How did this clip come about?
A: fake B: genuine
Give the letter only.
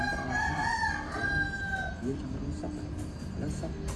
B